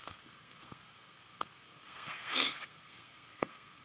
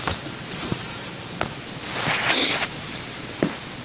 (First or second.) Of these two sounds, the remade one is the first